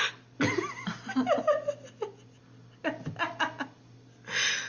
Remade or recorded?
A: recorded